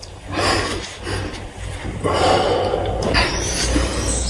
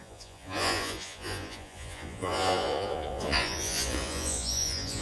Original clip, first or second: first